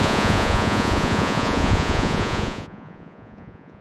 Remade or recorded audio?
remade